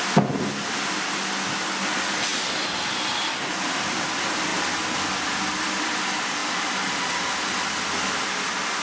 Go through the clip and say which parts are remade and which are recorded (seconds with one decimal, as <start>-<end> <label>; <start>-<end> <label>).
0.0-8.8 recorded